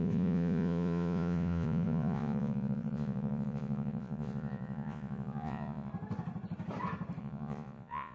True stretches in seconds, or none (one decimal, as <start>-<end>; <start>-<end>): 5.9-7.2